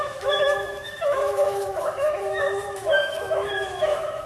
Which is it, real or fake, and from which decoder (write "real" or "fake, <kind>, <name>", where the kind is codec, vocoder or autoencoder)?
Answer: fake, autoencoder, DAC-VAE